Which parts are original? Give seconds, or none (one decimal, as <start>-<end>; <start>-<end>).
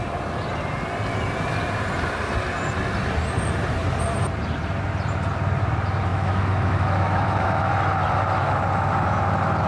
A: 0.0-6.1; 7.7-9.7